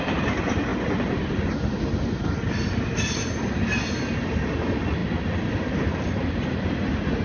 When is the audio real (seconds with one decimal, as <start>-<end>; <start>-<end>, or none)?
0.0-7.2